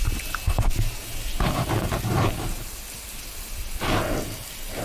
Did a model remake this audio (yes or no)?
no